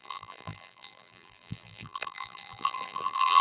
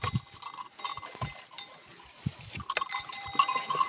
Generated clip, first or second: first